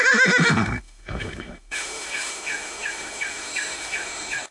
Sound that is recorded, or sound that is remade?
remade